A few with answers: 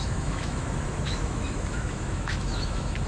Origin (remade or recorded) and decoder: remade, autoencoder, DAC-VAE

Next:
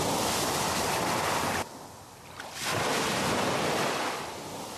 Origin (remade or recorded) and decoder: recorded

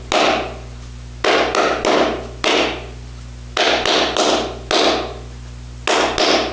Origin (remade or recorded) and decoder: recorded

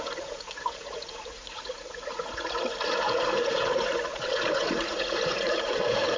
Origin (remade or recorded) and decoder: remade, vocoder, Vocos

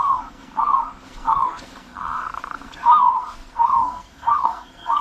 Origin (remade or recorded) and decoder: remade, codec, SNAC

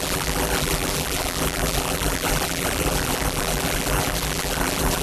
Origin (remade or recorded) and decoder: remade, vocoder, BigVGAN v2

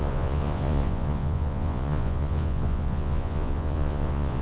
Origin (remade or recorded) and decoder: remade, vocoder, Vocos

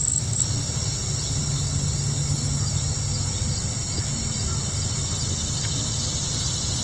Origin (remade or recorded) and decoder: recorded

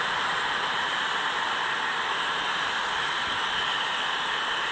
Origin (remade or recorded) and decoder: recorded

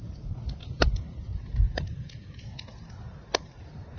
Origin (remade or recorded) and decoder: recorded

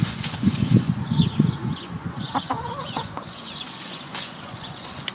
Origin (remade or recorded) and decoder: remade, vocoder, Vocos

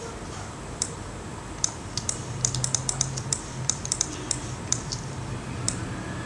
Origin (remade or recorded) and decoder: remade, vocoder, BigVGAN v2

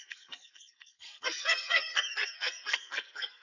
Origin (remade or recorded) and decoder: remade, codec, SNAC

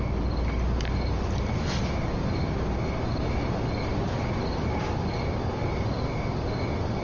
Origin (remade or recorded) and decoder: recorded